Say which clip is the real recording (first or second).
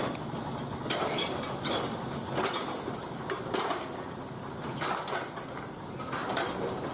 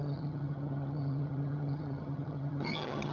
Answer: first